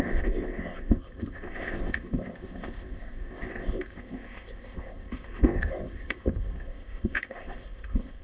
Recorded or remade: remade